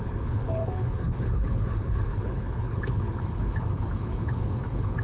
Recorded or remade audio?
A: remade